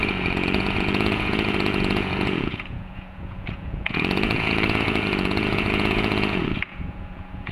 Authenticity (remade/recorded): remade